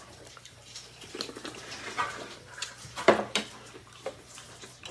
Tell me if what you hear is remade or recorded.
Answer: remade